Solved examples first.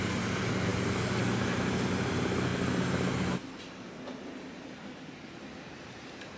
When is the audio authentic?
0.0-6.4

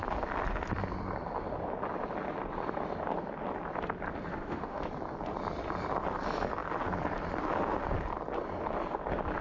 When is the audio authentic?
0.0-4.3; 4.8-9.4

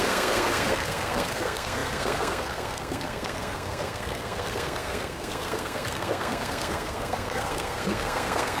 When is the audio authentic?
none

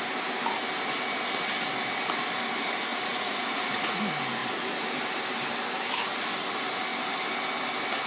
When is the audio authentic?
0.0-2.9; 4.0-8.1

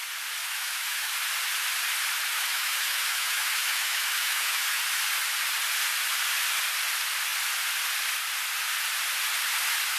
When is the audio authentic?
0.0-0.4; 1.1-2.3; 4.8-10.0

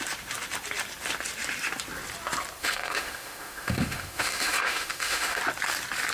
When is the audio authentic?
0.0-2.6; 5.4-6.1